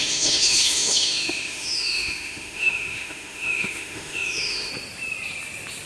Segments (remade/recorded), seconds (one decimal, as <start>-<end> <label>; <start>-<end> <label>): 0.0-4.7 remade; 4.7-5.9 recorded